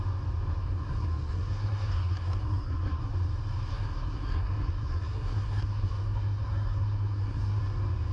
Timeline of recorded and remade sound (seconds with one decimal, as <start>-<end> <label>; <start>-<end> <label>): 0.0-0.6 recorded; 0.6-3.1 remade; 3.1-3.7 recorded; 3.7-7.6 remade; 7.6-8.1 recorded